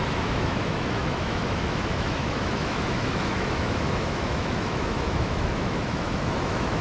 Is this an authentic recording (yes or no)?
no